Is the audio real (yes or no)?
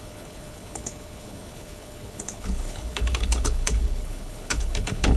no